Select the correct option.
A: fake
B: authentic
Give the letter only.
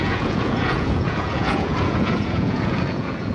A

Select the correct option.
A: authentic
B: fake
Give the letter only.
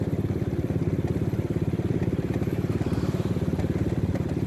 A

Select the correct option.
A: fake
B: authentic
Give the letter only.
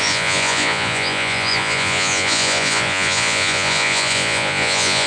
A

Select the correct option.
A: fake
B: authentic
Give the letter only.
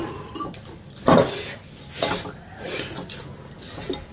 B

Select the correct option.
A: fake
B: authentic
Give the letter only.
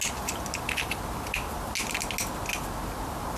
B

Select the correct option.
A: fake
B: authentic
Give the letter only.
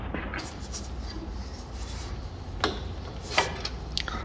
B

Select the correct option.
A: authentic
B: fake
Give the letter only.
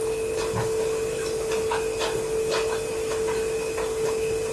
A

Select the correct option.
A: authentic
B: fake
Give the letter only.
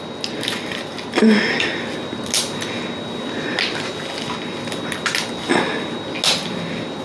A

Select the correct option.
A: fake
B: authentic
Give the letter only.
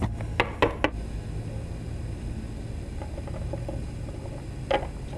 B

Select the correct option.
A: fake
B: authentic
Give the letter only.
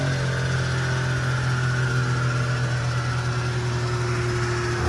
B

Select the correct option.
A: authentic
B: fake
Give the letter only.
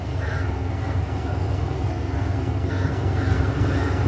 B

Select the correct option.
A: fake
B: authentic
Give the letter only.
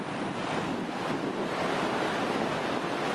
B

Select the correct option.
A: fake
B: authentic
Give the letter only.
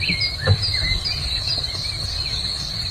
B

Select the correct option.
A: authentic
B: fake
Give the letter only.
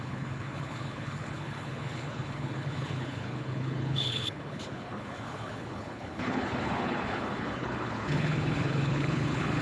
B